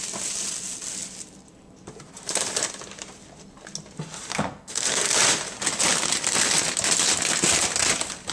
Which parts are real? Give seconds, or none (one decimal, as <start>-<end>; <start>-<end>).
0.0-4.3; 5.1-8.3